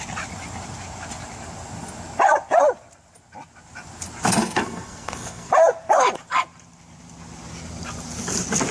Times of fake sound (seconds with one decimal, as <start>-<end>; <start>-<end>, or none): 4.4-5.5

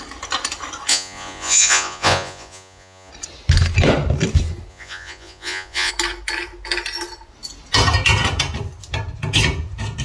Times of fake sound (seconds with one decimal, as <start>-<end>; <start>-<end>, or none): 0.9-3.1; 4.7-5.9

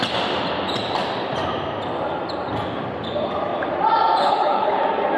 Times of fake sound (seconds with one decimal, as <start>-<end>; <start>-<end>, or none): 4.2-4.8

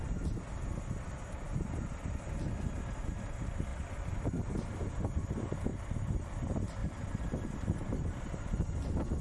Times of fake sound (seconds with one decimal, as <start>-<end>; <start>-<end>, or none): 3.7-4.7; 5.7-6.3; 6.8-8.2

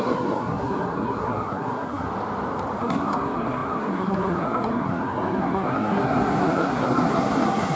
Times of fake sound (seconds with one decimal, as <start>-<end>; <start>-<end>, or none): 0.0-2.1; 2.8-7.8

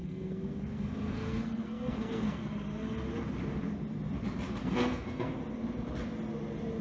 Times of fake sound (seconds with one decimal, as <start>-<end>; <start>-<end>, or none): 0.0-2.4; 4.6-5.3

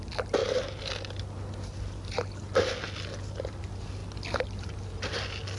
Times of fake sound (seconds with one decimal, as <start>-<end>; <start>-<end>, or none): none